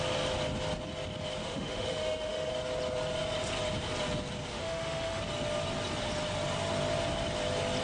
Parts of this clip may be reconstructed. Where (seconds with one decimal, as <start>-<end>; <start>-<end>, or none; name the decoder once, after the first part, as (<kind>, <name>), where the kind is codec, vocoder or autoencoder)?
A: 1.4-2.5 (autoencoder, DAC-VAE); 4.5-5.2